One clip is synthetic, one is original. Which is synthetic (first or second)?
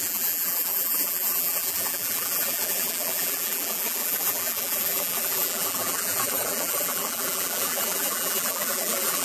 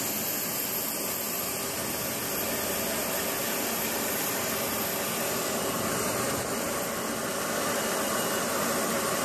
first